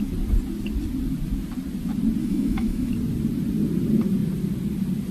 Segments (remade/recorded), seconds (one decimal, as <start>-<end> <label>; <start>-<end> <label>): 0.0-2.2 recorded; 2.2-2.9 remade; 2.9-5.1 recorded